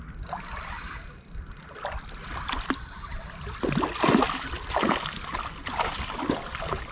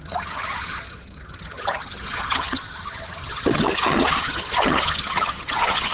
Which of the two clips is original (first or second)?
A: first